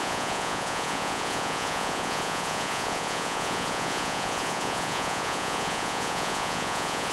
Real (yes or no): no